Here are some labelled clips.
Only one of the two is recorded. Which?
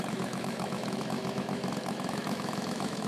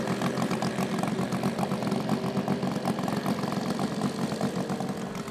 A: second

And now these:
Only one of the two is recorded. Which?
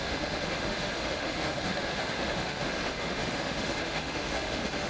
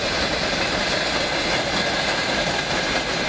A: second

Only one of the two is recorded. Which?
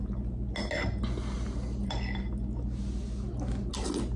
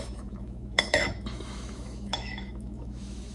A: first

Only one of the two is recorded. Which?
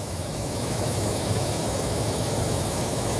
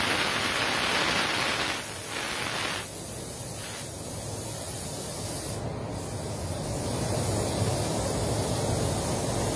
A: second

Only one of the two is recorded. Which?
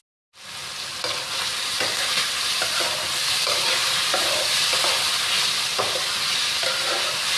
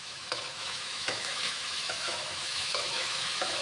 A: first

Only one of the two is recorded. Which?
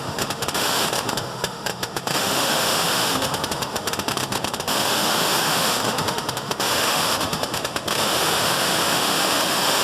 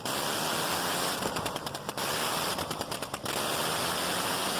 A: second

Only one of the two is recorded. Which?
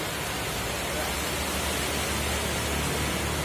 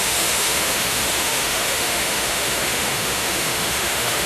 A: first